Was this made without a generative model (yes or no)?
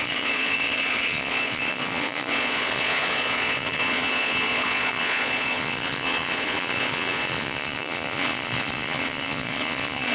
no